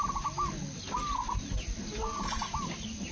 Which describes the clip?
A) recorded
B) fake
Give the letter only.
A